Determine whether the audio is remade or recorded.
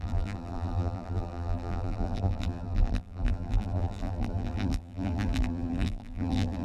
remade